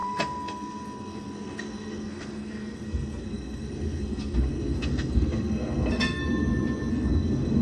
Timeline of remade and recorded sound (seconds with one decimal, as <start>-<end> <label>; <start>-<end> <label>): 0.0-6.2 remade; 6.2-6.9 recorded; 6.9-7.6 remade